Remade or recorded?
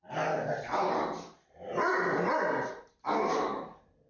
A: recorded